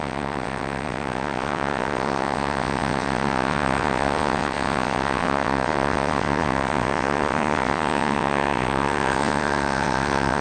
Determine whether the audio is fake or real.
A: fake